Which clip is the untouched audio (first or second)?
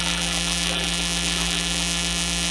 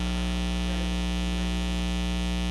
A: second